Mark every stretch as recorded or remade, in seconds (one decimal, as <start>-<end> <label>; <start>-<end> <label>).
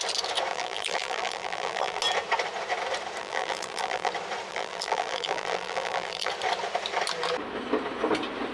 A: 0.0-0.5 recorded; 0.5-2.0 remade; 2.0-3.2 recorded; 3.2-4.1 remade; 4.1-4.5 recorded; 4.5-6.3 remade; 6.3-8.5 recorded